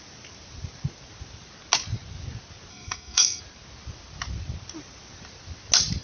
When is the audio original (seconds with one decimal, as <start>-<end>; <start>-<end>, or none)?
0.0-2.7; 3.4-6.0

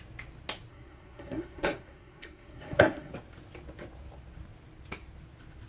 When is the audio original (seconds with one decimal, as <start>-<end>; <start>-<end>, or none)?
0.0-0.7; 3.1-5.7

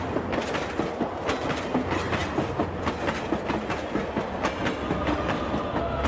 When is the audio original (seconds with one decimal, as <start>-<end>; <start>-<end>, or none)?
0.0-6.1

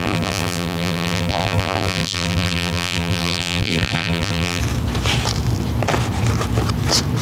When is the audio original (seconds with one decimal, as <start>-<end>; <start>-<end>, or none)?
4.6-7.2

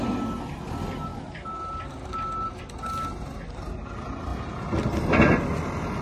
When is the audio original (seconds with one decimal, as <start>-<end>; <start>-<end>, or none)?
0.0-6.0

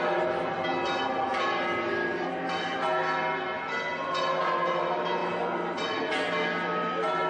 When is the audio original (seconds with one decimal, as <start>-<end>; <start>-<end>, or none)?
0.0-7.3